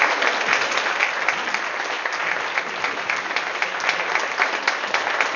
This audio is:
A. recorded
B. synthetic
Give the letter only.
A